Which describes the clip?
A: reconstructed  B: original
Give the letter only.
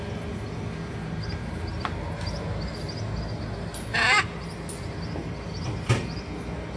B